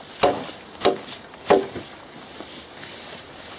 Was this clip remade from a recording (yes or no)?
yes